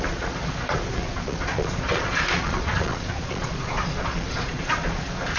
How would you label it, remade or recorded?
remade